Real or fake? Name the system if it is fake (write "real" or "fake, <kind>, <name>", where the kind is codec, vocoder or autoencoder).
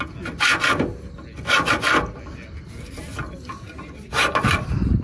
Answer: real